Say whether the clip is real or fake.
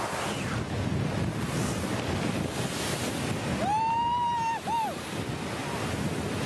real